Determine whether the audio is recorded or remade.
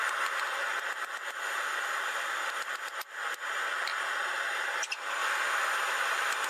recorded